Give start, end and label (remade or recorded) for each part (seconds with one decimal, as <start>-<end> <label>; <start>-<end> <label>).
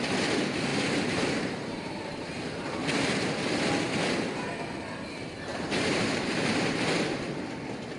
0.0-0.7 recorded; 0.7-2.3 remade; 2.3-5.5 recorded; 5.5-7.3 remade; 7.3-8.0 recorded